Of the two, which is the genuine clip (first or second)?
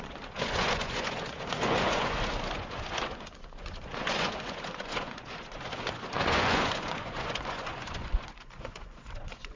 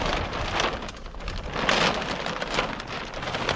second